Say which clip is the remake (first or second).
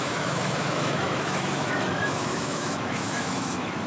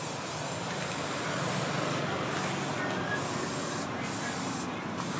first